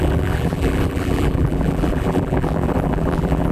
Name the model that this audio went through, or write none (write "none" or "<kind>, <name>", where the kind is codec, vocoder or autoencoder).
vocoder, BigVGAN v2